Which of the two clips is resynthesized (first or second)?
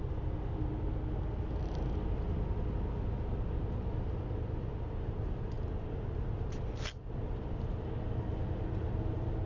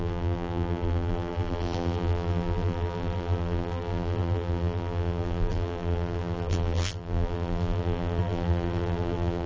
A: second